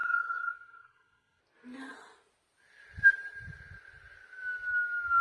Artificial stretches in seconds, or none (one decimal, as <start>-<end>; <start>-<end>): 0.0-1.4